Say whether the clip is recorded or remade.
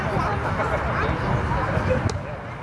recorded